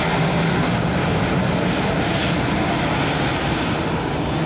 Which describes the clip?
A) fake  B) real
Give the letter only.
B